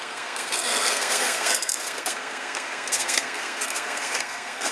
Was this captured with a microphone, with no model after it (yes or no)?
no